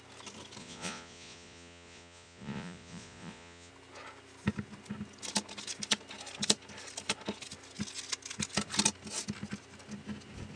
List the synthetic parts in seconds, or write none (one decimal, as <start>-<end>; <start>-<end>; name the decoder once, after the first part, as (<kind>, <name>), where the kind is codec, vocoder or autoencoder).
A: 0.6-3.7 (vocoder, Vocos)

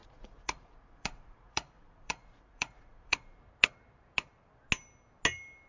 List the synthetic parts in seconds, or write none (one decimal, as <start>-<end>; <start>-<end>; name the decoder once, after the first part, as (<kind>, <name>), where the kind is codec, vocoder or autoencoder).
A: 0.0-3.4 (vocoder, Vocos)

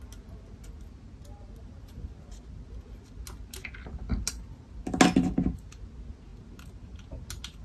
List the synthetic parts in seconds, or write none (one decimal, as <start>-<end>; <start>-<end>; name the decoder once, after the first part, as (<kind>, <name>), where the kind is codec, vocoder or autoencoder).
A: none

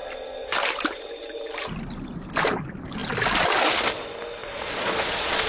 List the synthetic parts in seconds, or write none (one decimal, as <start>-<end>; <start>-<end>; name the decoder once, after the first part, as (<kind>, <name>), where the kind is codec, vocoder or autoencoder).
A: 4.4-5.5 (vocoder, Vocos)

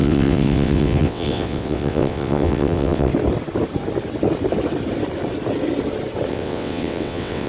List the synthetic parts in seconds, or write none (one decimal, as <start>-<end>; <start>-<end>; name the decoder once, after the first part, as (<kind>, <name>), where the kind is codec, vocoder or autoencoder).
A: 0.0-3.1 (vocoder, WaveNeXt); 6.3-7.5